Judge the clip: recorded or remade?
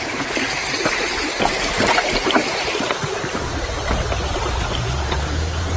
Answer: remade